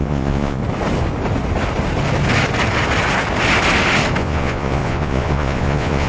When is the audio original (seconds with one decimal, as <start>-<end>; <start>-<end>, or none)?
0.6-4.2